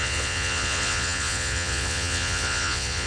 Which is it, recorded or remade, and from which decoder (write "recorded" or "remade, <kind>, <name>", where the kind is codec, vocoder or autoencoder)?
remade, vocoder, Vocos